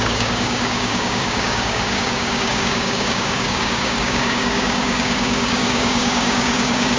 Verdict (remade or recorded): remade